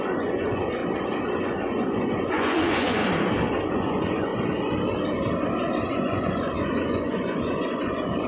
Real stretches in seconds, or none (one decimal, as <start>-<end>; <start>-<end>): 0.8-1.4; 3.0-3.7; 4.3-5.9